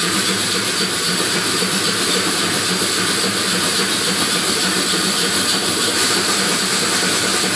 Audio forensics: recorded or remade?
remade